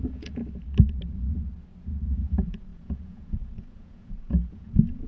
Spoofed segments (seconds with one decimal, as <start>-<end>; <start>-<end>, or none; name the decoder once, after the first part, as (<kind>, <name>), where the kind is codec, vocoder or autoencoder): 0.0-0.4 (vocoder, Vocos); 2.1-5.1